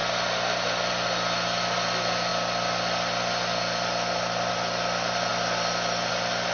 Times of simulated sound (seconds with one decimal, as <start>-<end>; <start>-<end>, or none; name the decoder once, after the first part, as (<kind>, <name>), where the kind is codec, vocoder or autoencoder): none